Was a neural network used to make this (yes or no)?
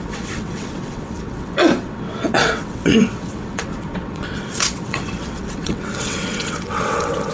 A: yes